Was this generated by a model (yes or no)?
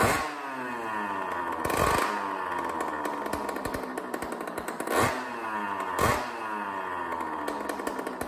no